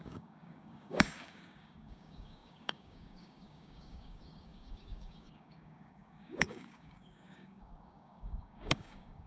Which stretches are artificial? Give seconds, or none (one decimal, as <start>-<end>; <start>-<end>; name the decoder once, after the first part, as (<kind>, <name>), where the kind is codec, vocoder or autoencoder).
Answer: 0.0-9.3 (codec, DAC)

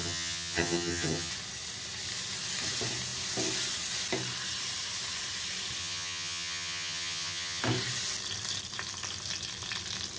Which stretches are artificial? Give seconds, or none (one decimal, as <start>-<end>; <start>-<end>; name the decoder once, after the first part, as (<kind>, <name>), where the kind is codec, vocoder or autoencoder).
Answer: 0.0-1.3 (vocoder, HiFi-GAN); 5.8-7.6